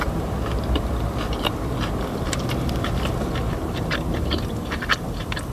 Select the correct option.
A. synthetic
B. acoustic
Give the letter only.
A